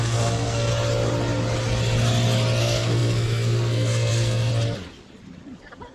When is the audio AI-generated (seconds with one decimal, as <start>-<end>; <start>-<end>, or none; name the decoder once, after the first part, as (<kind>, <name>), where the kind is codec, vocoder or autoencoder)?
0.0-0.7 (codec, SNAC); 2.6-4.5